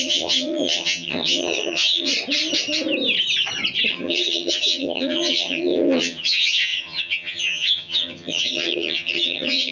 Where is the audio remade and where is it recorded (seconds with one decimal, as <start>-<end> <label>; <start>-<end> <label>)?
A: 0.0-2.1 remade; 2.1-3.9 recorded; 3.9-9.7 remade